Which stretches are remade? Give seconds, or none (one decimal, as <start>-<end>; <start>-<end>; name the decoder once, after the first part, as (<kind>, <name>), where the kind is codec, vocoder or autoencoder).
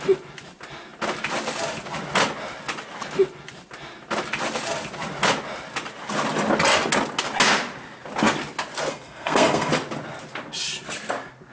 8.9-9.7 (codec, SNAC)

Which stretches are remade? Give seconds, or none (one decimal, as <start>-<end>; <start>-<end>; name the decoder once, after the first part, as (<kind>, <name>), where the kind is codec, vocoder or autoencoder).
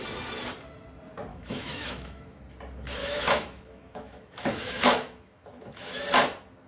1.3-2.4 (autoencoder, DAC-VAE); 3.0-6.0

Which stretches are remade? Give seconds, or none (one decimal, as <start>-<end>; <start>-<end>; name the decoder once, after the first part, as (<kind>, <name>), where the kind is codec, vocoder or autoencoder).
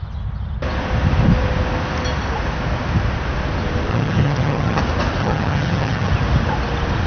3.9-4.8 (vocoder, HiFi-GAN); 5.2-6.1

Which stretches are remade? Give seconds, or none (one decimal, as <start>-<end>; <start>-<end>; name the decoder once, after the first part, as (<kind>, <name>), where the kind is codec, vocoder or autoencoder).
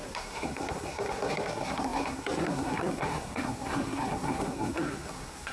0.0-5.5 (codec, SNAC)